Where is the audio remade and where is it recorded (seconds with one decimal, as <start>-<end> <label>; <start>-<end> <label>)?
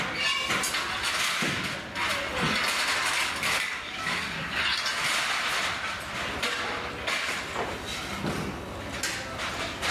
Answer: 0.0-3.0 recorded; 3.0-4.6 remade; 4.6-9.9 recorded